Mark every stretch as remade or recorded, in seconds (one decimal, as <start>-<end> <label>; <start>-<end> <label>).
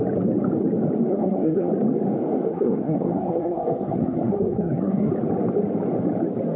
0.0-1.1 recorded; 1.1-1.7 remade; 1.7-2.5 recorded; 2.5-5.1 remade; 5.1-6.6 recorded